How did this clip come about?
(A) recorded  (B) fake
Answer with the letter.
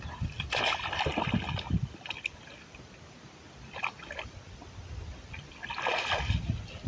A